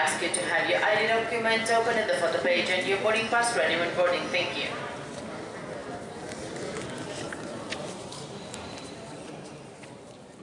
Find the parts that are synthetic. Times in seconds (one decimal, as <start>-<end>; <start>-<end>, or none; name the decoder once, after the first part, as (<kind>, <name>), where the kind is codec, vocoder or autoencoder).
7.7-10.4 (vocoder, BigVGAN v2)